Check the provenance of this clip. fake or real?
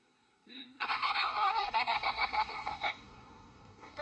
fake